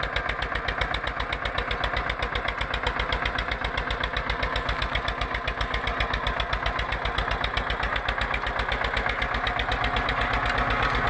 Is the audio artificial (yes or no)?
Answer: no